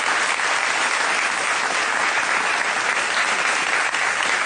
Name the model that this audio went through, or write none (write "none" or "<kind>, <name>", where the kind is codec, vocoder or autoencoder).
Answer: none